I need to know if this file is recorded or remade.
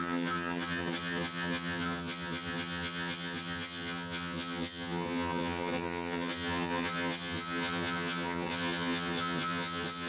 remade